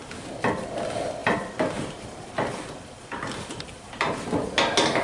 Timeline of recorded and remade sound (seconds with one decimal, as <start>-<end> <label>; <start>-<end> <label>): 0.0-1.2 recorded; 1.2-4.2 remade; 4.2-5.0 recorded